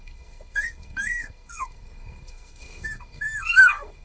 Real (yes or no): no